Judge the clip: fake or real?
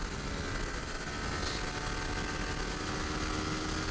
real